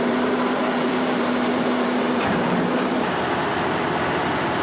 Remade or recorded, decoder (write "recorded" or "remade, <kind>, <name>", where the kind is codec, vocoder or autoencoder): remade, vocoder, BigVGAN v2